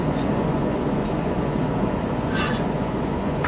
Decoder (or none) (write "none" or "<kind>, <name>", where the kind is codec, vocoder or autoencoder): vocoder, Vocos